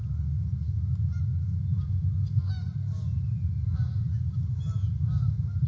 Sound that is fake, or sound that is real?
real